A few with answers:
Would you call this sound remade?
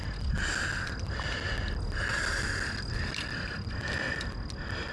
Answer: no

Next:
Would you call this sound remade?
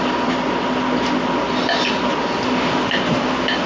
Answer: no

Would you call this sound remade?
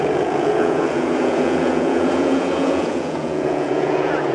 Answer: yes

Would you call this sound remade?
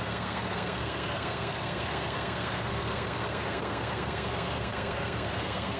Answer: yes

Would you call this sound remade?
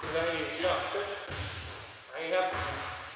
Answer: no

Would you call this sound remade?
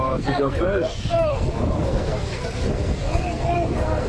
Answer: yes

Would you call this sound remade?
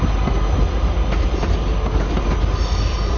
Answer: no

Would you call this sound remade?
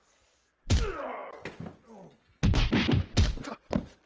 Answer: no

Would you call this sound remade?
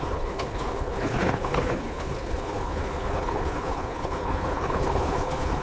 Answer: yes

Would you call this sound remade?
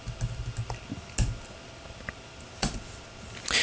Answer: no